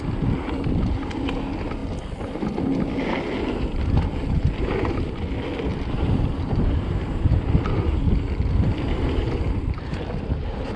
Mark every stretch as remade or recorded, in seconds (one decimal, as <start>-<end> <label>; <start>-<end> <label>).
0.0-5.7 recorded; 5.7-10.0 remade; 10.0-10.8 recorded